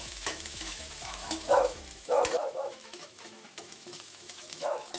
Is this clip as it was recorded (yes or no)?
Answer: no